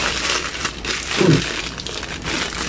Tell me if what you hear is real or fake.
real